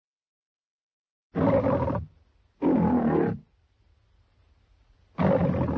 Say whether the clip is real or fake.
real